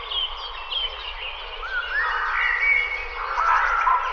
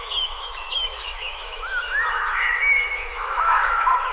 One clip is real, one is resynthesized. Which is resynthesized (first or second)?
second